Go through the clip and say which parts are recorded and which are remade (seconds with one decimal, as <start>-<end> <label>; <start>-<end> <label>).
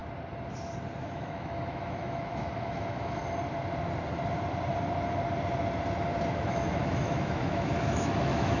0.0-1.0 recorded; 1.0-3.2 remade; 3.2-6.3 recorded; 6.3-8.6 remade